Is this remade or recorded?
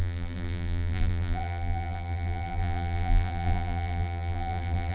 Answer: remade